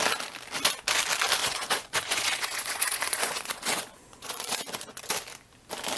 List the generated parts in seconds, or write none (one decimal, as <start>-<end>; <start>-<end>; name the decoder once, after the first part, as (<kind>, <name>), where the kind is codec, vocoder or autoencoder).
1.4-5.0 (vocoder, Vocos)